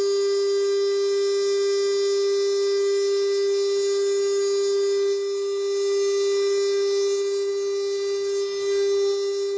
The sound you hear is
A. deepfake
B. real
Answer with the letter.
B